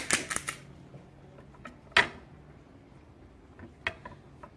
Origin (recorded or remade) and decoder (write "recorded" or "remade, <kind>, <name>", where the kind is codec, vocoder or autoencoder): recorded